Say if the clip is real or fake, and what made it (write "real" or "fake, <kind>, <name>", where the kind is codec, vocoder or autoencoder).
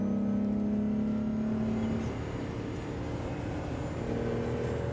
real